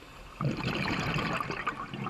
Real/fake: real